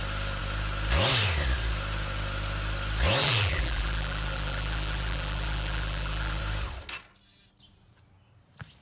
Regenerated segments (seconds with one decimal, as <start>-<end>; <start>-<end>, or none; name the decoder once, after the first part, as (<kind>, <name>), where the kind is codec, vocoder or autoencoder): 3.2-6.4 (vocoder, BigVGAN v2)